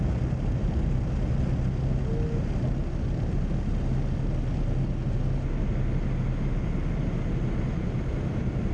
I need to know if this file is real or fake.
real